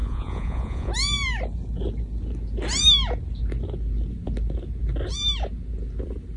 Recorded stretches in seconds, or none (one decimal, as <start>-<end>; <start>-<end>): 0.9-6.4